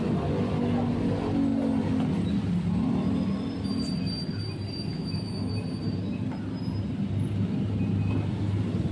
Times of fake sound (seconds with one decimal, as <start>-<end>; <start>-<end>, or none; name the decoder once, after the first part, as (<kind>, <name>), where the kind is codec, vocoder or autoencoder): 4.9-5.5 (autoencoder, DAC-VAE)